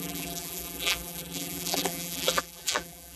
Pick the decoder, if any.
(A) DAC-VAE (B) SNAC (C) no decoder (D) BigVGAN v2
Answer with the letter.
D